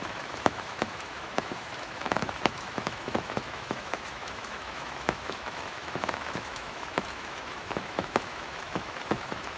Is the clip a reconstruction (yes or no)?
yes